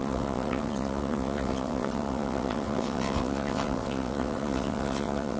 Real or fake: fake